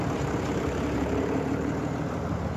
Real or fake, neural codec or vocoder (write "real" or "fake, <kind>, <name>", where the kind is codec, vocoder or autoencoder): fake, vocoder, BigVGAN v2